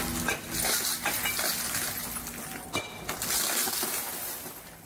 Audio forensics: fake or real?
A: real